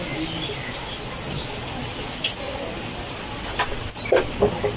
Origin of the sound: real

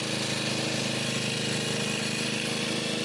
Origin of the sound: real